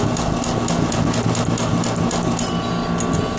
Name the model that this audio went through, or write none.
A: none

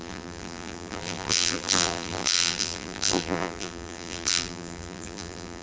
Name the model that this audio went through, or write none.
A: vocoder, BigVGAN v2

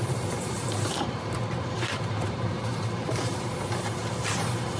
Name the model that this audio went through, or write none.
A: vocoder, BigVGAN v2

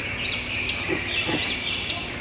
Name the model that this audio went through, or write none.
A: none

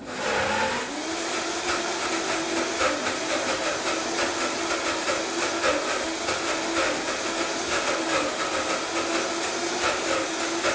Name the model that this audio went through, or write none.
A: none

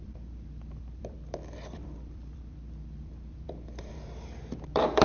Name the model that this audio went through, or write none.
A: vocoder, BigVGAN v2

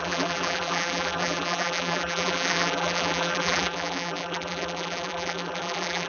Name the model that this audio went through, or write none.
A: vocoder, BigVGAN v2